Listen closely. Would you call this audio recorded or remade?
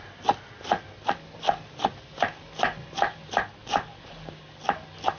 recorded